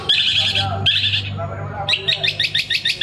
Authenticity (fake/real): real